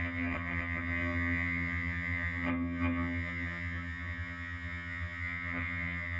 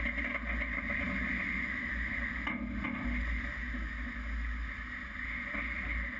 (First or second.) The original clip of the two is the second